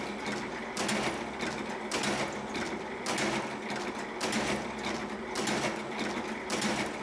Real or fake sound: real